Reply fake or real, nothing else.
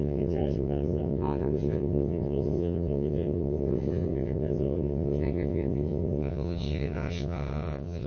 fake